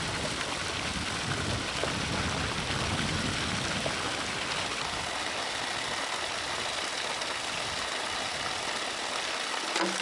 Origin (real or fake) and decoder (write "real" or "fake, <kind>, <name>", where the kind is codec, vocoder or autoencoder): real